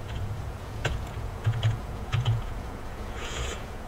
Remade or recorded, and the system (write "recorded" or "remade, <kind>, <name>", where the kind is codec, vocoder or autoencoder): remade, vocoder, Vocos